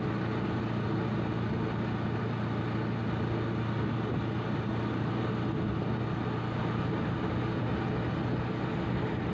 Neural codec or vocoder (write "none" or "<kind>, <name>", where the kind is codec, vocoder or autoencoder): none